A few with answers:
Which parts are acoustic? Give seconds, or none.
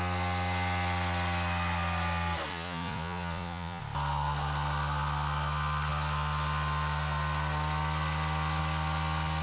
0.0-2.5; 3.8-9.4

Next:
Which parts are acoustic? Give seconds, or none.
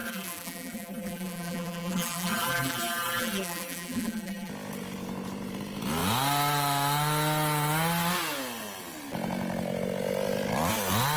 4.5-11.2